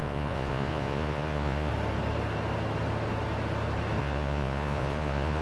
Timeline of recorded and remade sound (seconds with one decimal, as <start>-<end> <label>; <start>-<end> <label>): 0.0-1.7 remade; 1.7-4.0 recorded; 4.0-5.4 remade

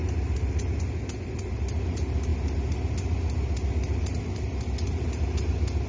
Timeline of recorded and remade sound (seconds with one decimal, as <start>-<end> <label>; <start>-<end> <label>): 0.0-5.9 recorded

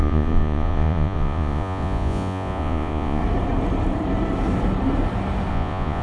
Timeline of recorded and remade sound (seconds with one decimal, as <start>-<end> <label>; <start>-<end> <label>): 0.0-3.2 remade; 3.2-5.5 recorded; 5.5-6.0 remade

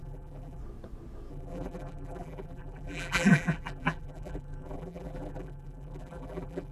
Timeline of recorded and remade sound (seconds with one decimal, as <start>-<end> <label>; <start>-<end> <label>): 0.0-0.6 remade; 0.6-1.3 recorded; 1.3-6.7 remade

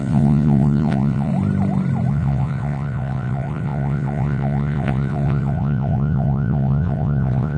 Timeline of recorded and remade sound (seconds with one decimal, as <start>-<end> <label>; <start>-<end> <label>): 0.0-1.3 remade; 1.3-2.1 recorded; 2.1-7.6 remade

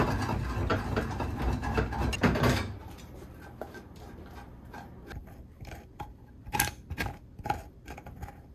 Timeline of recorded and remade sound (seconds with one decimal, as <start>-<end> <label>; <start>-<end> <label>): 0.0-8.5 recorded

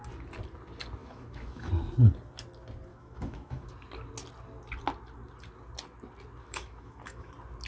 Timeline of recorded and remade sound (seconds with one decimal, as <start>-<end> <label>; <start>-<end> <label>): 0.0-1.0 recorded; 1.0-1.7 remade; 1.7-2.9 recorded; 2.9-3.7 remade; 3.7-6.4 recorded; 6.4-7.3 remade; 7.3-7.7 recorded